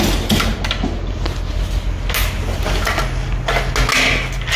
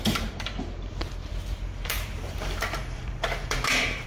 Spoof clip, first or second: second